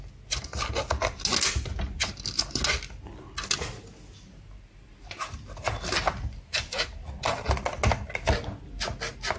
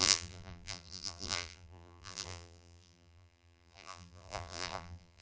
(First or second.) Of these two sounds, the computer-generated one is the second